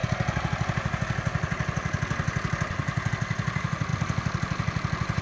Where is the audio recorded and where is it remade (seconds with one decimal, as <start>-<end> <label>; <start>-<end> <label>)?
0.0-5.2 recorded